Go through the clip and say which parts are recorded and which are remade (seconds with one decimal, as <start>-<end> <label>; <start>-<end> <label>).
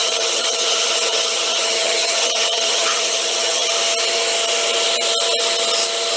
0.0-3.7 remade; 3.7-6.2 recorded